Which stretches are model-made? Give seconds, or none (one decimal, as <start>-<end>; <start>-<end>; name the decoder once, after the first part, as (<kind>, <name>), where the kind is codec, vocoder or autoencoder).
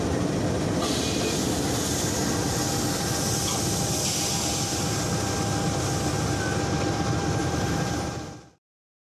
7.4-8.5 (vocoder, BigVGAN v2)